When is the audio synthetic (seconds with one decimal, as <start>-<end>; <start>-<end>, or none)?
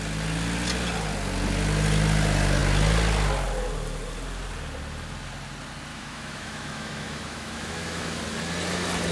5.9-8.2